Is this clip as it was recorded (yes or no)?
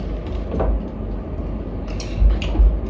yes